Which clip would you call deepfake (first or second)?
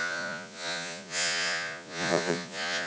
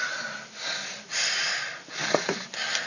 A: first